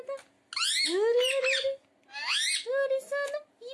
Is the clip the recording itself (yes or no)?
yes